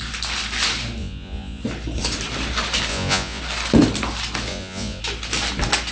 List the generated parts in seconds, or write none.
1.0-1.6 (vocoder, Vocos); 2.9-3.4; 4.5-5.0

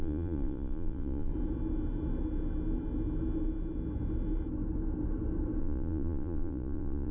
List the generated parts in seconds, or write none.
0.0-1.3 (vocoder, Vocos); 5.6-7.1

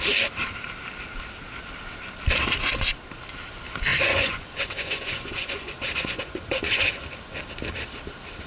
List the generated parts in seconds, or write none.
3.9-6.9 (vocoder, Vocos)

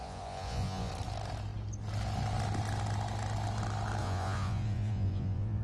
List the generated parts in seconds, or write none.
0.0-0.9 (vocoder, Vocos); 4.0-5.6

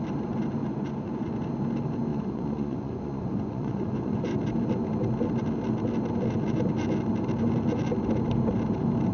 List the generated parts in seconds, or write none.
0.6-1.3 (vocoder, Vocos); 2.1-4.4